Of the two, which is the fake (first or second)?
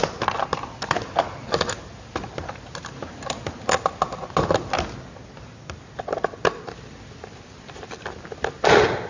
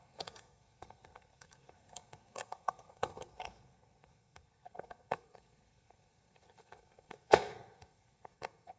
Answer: second